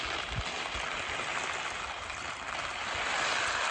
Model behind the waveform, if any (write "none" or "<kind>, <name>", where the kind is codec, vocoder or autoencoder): none